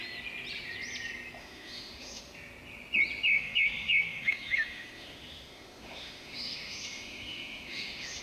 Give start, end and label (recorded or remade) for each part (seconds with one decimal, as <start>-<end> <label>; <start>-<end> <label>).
0.0-1.4 recorded; 1.4-2.2 remade; 2.2-3.3 recorded; 3.3-8.2 remade